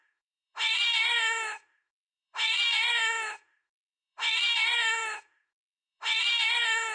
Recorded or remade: remade